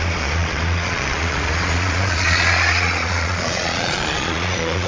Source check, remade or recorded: remade